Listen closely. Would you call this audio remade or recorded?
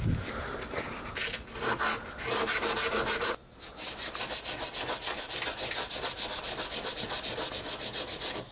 recorded